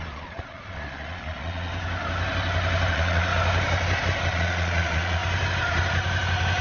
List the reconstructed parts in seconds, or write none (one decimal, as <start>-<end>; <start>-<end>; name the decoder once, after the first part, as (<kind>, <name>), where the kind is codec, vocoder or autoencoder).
0.0-1.7 (vocoder, Vocos); 2.9-3.3; 4.3-5.2